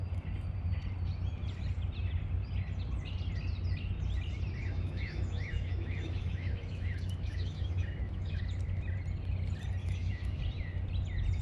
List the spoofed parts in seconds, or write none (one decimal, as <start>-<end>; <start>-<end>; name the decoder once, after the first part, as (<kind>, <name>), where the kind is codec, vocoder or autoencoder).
4.6-8.4 (autoencoder, DAC-VAE); 9.8-10.4